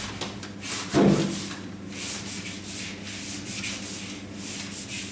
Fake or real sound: real